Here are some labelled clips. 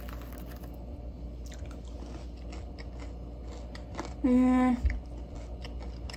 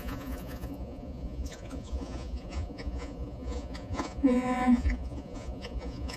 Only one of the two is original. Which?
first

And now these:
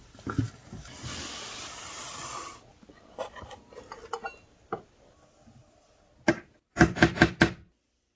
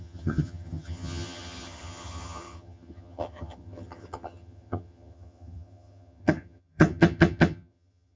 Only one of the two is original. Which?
first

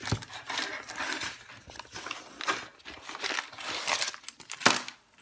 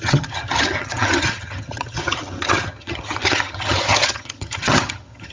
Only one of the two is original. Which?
first